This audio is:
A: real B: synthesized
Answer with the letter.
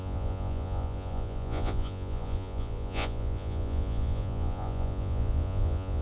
B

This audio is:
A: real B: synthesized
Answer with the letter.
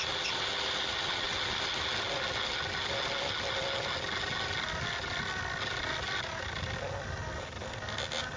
A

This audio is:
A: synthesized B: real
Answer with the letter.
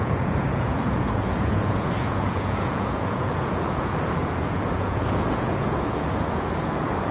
A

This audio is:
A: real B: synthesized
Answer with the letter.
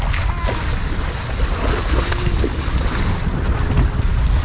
A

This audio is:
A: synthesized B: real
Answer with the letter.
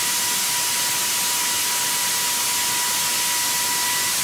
B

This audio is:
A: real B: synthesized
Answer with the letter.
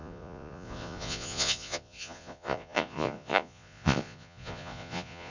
B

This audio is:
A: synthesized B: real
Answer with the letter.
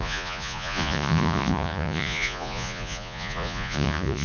A